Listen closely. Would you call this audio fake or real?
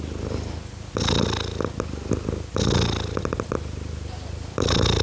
real